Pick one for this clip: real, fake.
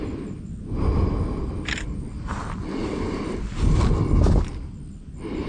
real